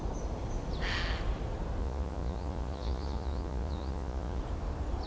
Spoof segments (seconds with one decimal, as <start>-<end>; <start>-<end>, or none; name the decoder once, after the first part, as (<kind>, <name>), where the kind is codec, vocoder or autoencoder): 1.8-4.4 (vocoder, Vocos)